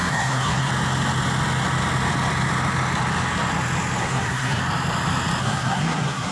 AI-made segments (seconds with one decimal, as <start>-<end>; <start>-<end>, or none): 0.0-0.7; 4.0-4.6; 5.4-6.3